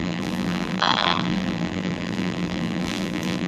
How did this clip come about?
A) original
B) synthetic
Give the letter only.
B